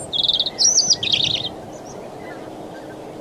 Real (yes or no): yes